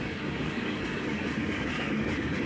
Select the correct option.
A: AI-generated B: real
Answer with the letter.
A